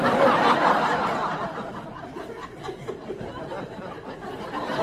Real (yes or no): yes